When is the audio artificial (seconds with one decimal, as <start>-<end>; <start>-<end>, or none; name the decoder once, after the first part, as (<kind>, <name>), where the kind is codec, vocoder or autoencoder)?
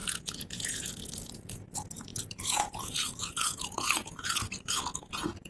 0.0-5.5 (vocoder, Vocos)